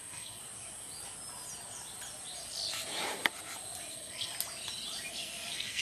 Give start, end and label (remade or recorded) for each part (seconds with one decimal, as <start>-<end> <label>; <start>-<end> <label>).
0.0-0.4 remade; 0.4-3.9 recorded; 3.9-4.3 remade; 4.3-5.1 recorded; 5.1-5.8 remade